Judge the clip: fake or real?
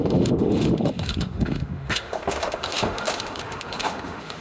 fake